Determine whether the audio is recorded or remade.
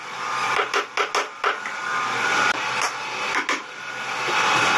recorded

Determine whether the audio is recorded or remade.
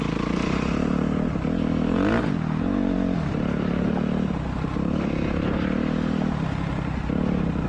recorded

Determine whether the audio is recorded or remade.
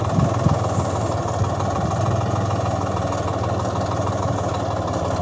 recorded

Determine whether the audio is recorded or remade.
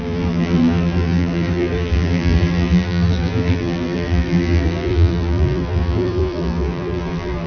remade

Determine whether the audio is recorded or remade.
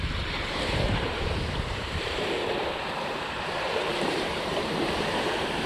remade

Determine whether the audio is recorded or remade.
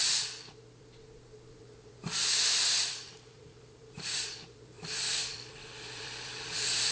remade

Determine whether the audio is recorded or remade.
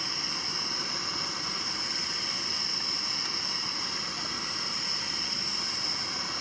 recorded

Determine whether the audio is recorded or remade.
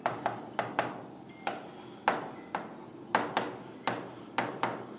recorded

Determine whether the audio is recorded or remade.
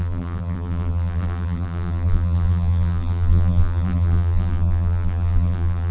remade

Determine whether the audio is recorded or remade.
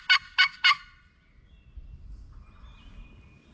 recorded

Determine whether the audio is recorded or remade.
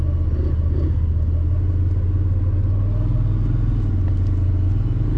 recorded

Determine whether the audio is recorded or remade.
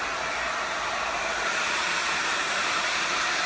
remade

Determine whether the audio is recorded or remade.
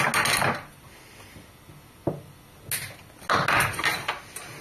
recorded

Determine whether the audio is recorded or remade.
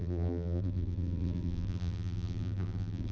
remade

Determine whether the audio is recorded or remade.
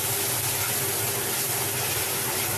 recorded